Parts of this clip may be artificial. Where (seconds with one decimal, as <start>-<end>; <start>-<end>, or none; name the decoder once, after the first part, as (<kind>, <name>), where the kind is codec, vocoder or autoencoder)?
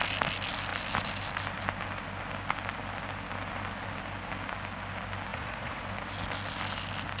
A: 5.3-5.8 (vocoder, Vocos)